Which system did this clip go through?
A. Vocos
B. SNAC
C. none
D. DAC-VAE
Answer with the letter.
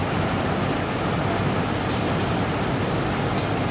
C